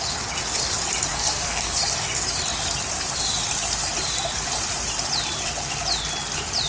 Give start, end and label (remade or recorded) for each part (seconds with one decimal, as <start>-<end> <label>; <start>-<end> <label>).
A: 0.0-1.1 recorded; 1.1-1.8 remade; 1.8-6.7 recorded